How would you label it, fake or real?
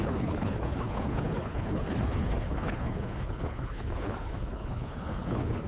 fake